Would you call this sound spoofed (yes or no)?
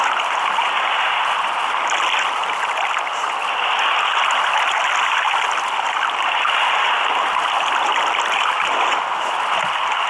no